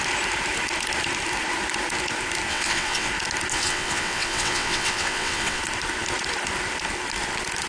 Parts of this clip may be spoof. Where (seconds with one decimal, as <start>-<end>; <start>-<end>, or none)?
2.5-3.1; 3.5-5.6